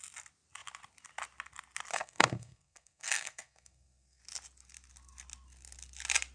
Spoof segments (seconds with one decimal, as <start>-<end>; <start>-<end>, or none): 1.9-4.2